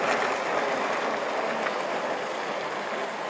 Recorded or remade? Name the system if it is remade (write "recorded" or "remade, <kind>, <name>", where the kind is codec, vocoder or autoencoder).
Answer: recorded